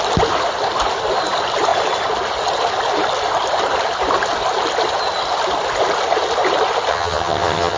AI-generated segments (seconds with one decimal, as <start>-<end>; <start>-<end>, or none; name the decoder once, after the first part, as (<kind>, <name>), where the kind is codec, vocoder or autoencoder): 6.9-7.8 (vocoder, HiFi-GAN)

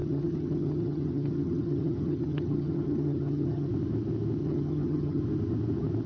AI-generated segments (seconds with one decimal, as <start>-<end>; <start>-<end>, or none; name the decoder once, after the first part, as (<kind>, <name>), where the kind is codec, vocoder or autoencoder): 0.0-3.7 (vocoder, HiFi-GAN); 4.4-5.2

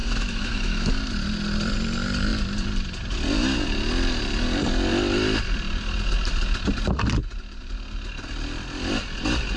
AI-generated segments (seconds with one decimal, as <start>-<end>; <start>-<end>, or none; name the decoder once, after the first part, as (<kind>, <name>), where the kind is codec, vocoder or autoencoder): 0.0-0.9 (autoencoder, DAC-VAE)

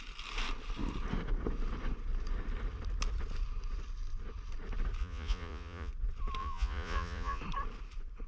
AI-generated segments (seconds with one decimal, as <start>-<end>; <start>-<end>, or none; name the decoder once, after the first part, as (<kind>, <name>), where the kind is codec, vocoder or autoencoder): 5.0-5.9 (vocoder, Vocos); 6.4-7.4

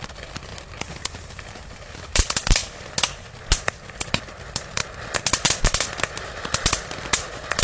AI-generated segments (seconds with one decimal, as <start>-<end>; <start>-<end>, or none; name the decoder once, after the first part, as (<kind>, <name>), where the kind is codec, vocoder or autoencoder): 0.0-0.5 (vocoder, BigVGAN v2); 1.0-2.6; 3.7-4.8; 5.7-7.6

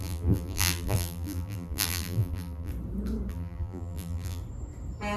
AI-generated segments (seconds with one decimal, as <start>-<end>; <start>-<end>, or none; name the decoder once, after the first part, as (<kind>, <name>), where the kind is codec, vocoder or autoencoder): 0.0-2.7 (vocoder, BigVGAN v2); 3.3-4.4

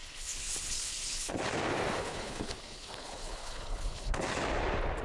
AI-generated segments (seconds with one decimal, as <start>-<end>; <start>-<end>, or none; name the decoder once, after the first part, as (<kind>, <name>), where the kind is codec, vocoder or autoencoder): 0.0-1.3 (codec, HILCodec); 2.0-4.2

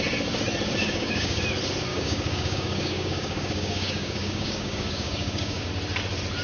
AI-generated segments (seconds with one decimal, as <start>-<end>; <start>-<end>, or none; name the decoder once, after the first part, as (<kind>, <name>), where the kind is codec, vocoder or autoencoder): 0.8-1.4 (codec, DAC); 1.9-5.7